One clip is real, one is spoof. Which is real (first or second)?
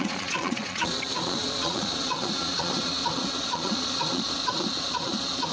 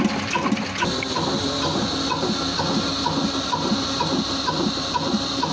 second